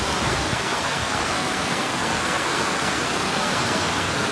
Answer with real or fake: fake